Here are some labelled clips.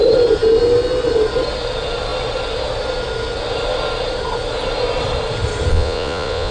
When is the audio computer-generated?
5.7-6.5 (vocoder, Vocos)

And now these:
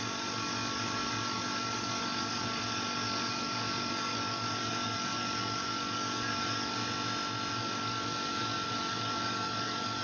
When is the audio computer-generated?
0.0-6.8 (codec, DAC); 7.5-10.0

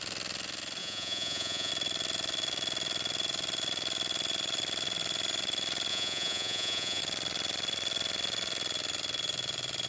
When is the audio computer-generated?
0.8-1.7 (vocoder, Vocos); 5.9-7.0

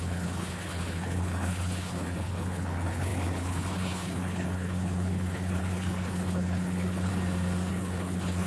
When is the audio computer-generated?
0.0-7.1 (codec, HILCodec); 7.7-8.5

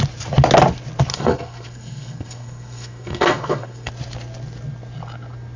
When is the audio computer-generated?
1.1-3.9 (codec, SNAC)

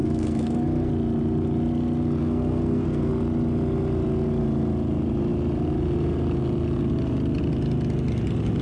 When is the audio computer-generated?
0.0-0.9 (codec, SNAC); 2.2-3.1